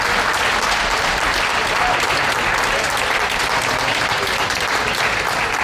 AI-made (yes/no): no